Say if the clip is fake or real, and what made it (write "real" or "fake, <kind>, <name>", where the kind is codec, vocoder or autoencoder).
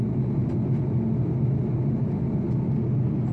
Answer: real